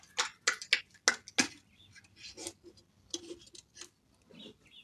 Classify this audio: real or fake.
real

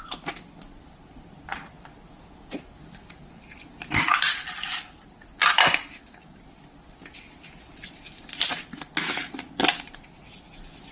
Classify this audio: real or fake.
real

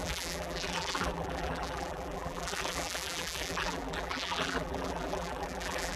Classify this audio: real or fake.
fake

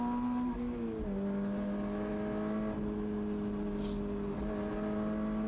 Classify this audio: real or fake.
real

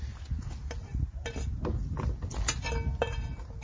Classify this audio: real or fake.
real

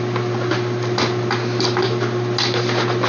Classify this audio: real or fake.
real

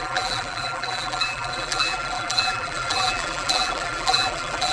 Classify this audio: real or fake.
fake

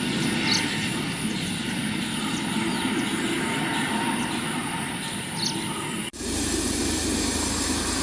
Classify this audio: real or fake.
real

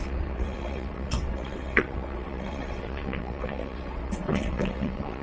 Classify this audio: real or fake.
fake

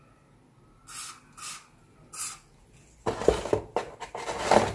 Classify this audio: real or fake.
real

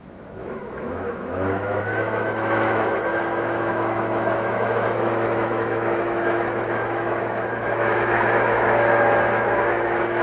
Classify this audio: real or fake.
fake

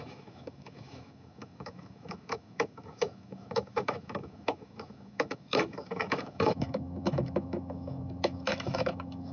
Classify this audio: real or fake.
fake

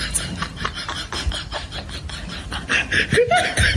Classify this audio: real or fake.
real